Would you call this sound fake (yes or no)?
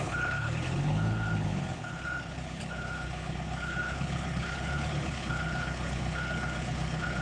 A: yes